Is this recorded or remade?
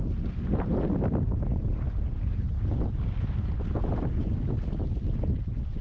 recorded